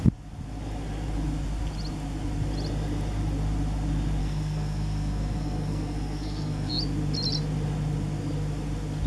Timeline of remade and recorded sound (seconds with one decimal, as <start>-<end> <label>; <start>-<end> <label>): 0.0-4.2 recorded; 4.2-6.7 remade; 6.7-9.1 recorded